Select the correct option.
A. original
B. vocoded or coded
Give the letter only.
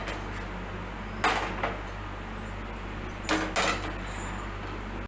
A